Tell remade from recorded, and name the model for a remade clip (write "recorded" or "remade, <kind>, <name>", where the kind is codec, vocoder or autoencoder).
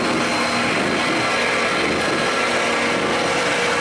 recorded